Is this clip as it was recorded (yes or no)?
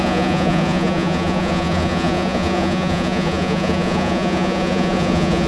no